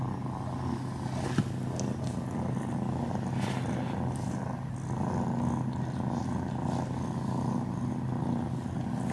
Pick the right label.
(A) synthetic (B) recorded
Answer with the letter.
B